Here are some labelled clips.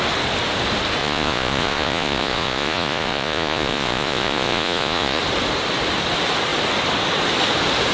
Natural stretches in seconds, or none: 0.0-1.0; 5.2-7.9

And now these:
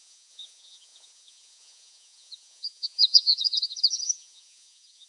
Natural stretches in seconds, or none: none

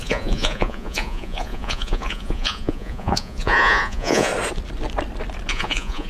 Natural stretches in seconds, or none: 4.3-5.5

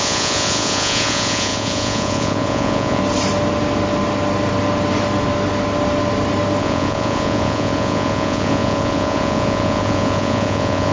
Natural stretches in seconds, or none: 3.0-6.6

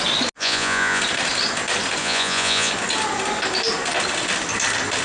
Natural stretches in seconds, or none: 0.0-0.4; 1.0-2.0; 2.7-5.0